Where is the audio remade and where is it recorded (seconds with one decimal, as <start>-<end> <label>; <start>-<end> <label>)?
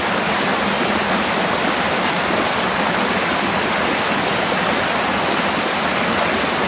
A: 0.0-6.7 recorded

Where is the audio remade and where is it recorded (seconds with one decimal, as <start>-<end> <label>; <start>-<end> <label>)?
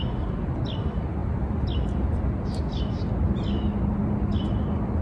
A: 0.0-5.0 recorded